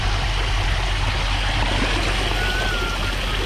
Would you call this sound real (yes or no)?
yes